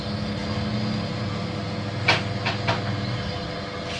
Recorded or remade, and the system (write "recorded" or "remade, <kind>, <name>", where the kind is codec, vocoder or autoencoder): recorded